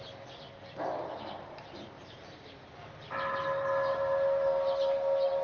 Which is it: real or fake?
real